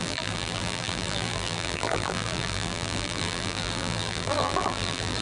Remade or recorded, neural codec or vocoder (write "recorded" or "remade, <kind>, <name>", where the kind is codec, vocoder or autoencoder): remade, vocoder, BigVGAN v2